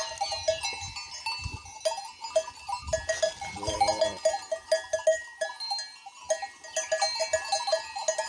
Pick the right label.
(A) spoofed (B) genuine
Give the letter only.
B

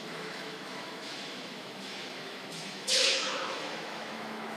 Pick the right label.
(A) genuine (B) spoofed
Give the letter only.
B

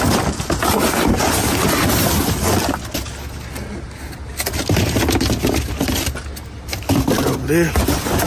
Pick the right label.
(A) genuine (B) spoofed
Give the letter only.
A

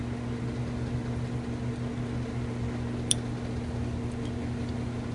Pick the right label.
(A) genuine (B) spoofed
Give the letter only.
A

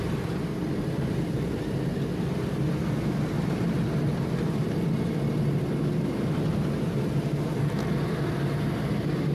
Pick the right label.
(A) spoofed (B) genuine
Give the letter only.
B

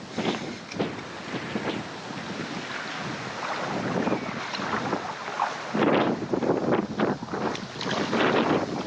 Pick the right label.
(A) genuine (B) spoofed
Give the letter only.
A